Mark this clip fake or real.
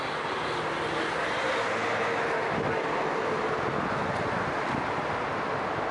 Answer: real